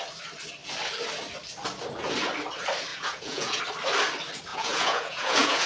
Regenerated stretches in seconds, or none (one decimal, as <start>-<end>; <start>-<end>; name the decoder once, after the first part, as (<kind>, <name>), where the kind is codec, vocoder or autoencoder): 2.9-3.6 (vocoder, Vocos); 4.5-5.7